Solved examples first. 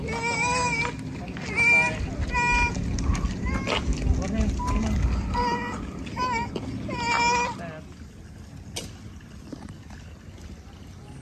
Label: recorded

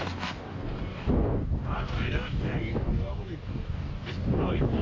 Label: remade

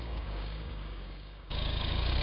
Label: remade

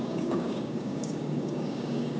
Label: remade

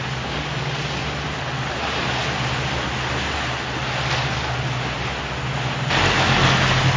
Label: recorded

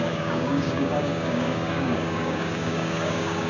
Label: remade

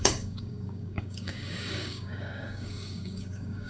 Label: remade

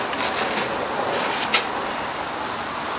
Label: recorded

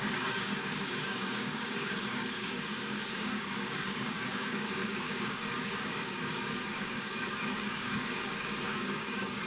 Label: remade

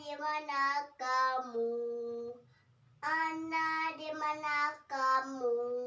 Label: recorded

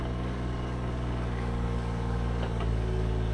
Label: remade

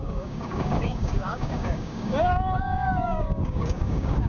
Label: remade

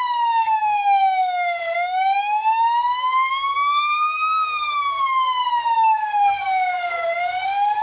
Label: remade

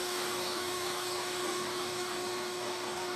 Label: remade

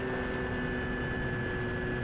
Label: recorded